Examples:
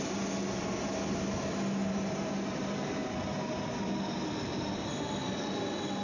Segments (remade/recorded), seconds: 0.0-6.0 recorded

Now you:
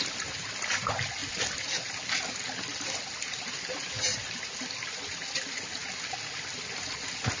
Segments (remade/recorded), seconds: 0.0-7.4 recorded